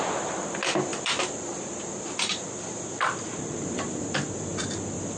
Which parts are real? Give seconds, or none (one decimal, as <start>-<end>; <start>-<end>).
0.0-0.9; 4.0-4.5